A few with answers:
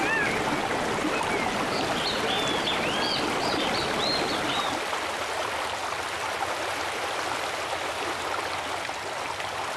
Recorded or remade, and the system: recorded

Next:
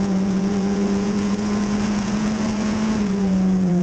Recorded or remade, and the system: remade, vocoder, Vocos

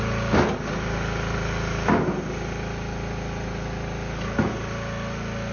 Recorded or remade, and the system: recorded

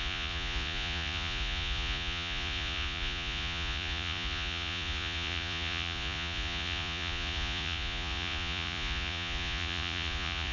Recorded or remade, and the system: remade, vocoder, Vocos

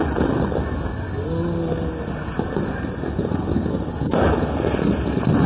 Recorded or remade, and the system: recorded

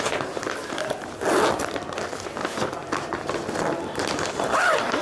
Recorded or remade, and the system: recorded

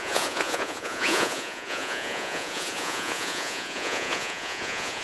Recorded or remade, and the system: remade, vocoder, Vocos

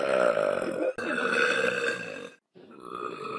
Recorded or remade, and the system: recorded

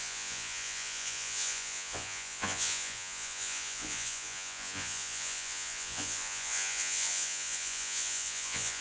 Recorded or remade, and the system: remade, vocoder, Vocos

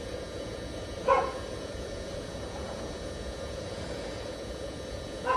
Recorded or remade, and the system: remade, vocoder, Vocos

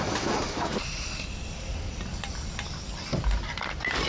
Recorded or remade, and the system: recorded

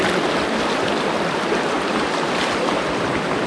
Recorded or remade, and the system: recorded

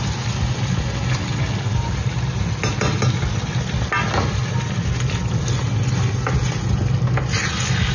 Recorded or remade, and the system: recorded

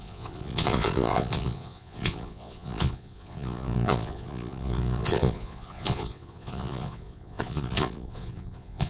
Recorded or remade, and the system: remade, vocoder, Vocos